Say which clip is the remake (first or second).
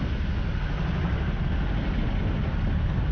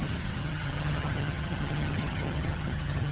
second